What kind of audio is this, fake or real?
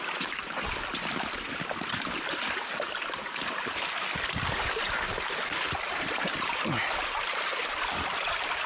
real